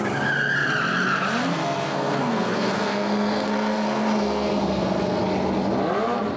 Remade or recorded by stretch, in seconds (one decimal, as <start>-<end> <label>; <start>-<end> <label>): 0.0-1.4 recorded; 1.4-5.2 remade; 5.2-6.4 recorded